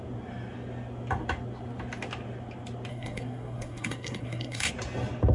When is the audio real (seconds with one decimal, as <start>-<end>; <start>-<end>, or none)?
0.0-2.9; 4.7-5.3